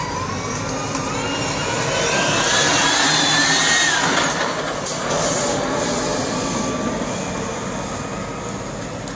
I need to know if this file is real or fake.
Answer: real